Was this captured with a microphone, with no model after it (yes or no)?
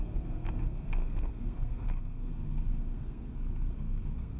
no